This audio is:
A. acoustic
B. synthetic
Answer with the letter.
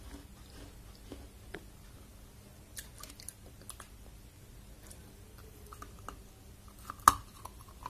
A